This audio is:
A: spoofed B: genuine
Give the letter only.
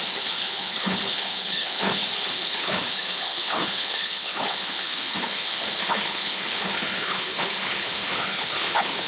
A